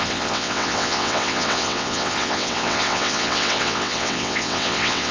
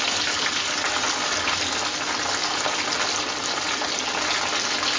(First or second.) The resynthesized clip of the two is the first